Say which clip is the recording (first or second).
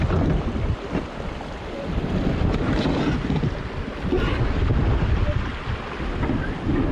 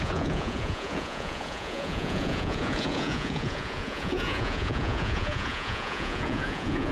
first